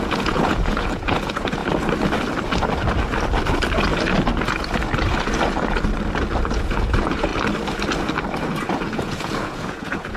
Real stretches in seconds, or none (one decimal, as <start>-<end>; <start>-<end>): 1.6-6.6; 7.3-8.7